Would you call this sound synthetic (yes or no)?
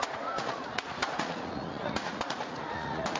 yes